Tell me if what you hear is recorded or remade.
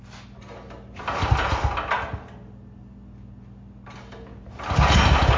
recorded